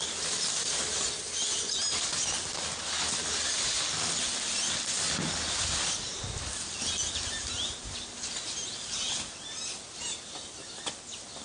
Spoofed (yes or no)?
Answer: no